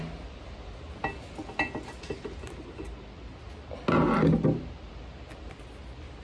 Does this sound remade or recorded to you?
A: recorded